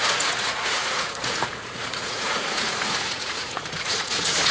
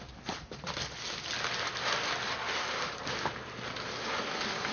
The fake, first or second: first